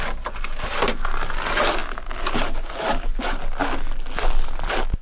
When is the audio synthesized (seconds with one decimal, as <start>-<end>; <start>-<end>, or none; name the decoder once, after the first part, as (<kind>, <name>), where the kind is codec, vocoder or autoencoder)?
none